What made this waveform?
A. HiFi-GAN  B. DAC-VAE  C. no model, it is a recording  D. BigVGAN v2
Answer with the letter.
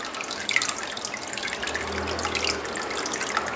C